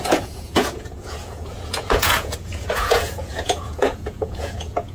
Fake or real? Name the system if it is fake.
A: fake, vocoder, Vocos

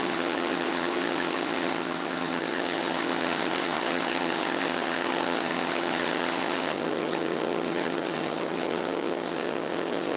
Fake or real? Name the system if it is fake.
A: fake, vocoder, HiFi-GAN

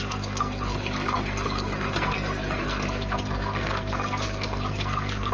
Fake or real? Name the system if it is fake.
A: fake, codec, SNAC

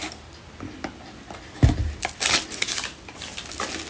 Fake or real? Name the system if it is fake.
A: real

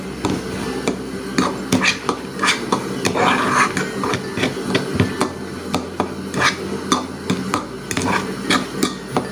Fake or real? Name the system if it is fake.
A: real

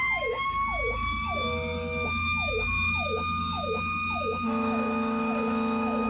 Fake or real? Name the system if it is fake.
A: fake, autoencoder, DAC-VAE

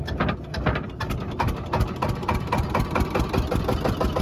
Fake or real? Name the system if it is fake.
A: real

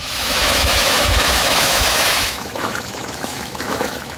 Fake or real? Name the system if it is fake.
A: fake, autoencoder, DAC-VAE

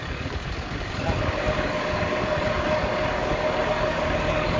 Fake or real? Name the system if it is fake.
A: fake, codec, DAC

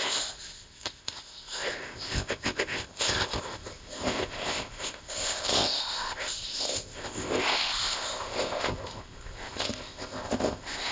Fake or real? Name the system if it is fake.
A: fake, codec, ZipCodec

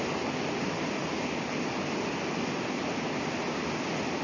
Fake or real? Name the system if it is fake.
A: real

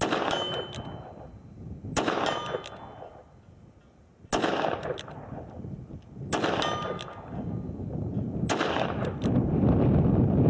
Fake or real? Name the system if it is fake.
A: real